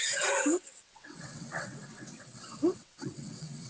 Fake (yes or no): yes